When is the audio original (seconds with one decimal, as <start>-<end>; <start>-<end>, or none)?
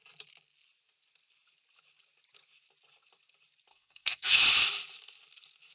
0.0-3.7; 4.4-5.7